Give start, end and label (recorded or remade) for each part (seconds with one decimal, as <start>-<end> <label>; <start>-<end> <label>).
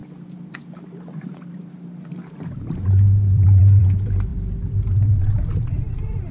0.0-6.3 remade